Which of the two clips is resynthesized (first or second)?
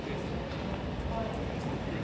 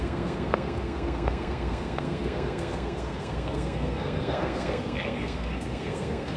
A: second